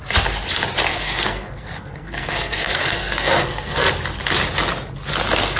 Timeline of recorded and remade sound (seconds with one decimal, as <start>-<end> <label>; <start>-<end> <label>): 0.0-0.9 recorded; 0.9-3.9 remade; 3.9-5.6 recorded

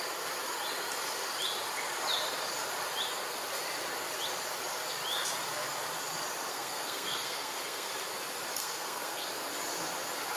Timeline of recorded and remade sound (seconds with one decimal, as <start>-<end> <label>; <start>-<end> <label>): 0.0-6.5 recorded; 6.5-7.9 remade; 7.9-8.6 recorded; 8.6-9.3 remade; 9.3-10.4 recorded

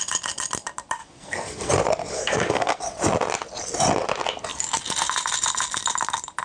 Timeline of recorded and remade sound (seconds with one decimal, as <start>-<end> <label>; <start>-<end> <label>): 0.0-1.0 recorded; 1.0-1.7 remade; 1.7-2.1 recorded; 2.1-2.8 remade; 2.8-6.4 recorded

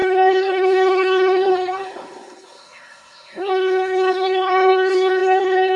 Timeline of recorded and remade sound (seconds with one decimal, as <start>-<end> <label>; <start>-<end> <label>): 0.0-5.8 remade

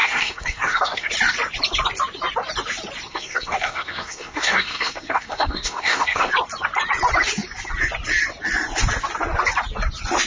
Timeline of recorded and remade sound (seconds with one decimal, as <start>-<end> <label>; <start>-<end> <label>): 0.0-1.1 remade; 1.1-3.1 recorded; 3.1-6.3 remade; 6.3-10.3 recorded

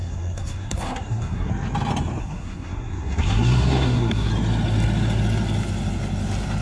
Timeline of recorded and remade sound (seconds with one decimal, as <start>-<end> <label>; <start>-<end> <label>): 0.0-1.5 remade; 1.5-2.2 recorded; 2.2-4.3 remade; 4.3-6.6 recorded

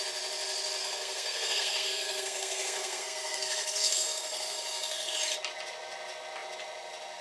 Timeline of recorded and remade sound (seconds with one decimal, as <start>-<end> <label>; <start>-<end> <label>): 0.0-0.8 recorded; 0.8-5.1 remade; 5.1-7.2 recorded

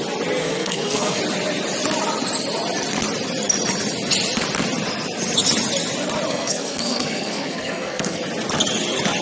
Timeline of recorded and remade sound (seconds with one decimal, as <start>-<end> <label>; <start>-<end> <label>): 0.0-0.4 recorded; 0.4-1.2 remade; 1.2-6.3 recorded; 6.3-8.2 remade; 8.2-9.2 recorded